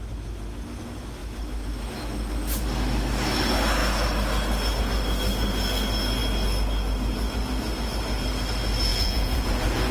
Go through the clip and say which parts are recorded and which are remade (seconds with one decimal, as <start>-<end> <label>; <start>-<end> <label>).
0.0-8.9 recorded; 8.9-9.9 remade